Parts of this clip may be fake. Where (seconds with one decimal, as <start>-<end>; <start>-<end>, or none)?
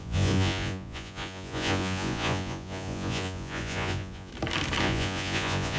0.0-4.3; 4.8-5.8